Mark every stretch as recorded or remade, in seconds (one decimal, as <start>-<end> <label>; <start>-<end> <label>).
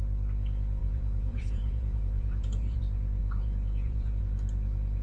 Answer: 0.0-0.8 recorded; 0.8-2.8 remade; 2.8-3.2 recorded; 3.2-4.2 remade; 4.2-5.0 recorded